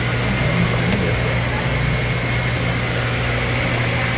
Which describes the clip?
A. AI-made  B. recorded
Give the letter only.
B